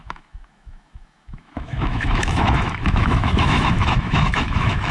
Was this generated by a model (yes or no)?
yes